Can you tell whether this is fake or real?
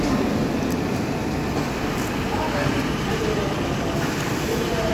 real